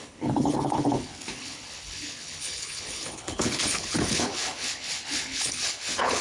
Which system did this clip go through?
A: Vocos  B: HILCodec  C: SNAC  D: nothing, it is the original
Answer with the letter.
B